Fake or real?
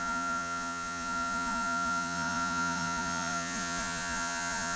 fake